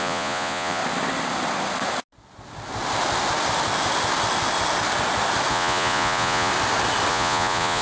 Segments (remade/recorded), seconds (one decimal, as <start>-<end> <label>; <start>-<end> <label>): 0.0-0.8 remade; 0.8-5.5 recorded; 5.5-6.5 remade; 6.5-7.1 recorded; 7.1-7.8 remade